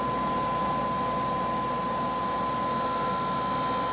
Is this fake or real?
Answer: real